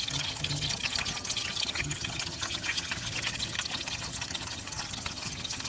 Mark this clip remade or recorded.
remade